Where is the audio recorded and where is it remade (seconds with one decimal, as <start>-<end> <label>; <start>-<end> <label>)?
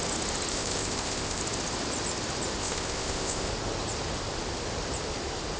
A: 0.0-0.5 recorded; 0.5-1.4 remade; 1.4-2.6 recorded; 2.6-3.5 remade; 3.5-5.6 recorded